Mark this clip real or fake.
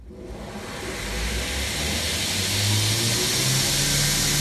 real